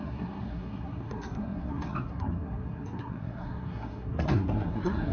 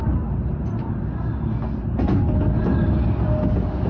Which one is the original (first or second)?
second